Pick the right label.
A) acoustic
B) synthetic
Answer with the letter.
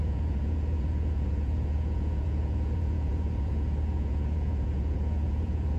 B